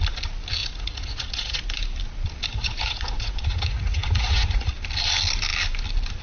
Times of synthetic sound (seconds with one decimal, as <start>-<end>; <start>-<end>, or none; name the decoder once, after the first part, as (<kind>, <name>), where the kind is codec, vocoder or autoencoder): 0.6-1.6 (vocoder, Vocos); 2.5-4.7